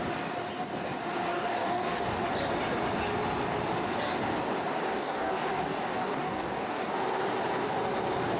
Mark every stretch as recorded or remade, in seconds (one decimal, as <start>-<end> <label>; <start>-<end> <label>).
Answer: 0.0-1.3 recorded; 1.3-2.2 remade; 2.2-4.9 recorded; 4.9-6.9 remade; 6.9-8.4 recorded